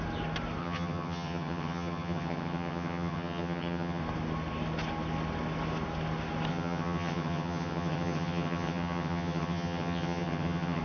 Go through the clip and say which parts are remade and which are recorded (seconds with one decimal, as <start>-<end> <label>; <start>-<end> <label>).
0.0-0.6 recorded; 0.6-4.0 remade; 4.0-6.5 recorded; 6.5-10.8 remade